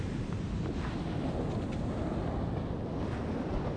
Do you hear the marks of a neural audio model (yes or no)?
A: no